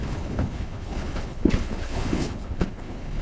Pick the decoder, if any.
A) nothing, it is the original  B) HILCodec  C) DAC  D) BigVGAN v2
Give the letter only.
B